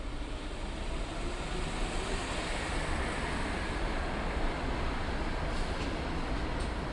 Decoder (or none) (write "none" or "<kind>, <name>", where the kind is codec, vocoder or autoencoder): none